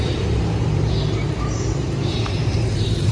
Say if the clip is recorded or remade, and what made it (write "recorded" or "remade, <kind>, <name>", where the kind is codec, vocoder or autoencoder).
remade, vocoder, BigVGAN v2